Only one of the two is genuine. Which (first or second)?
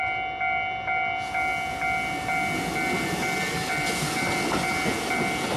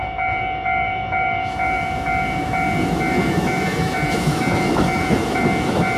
first